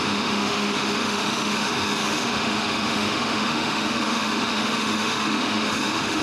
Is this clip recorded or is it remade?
remade